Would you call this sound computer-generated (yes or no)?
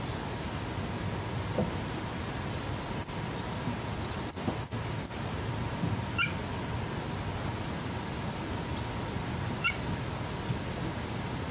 no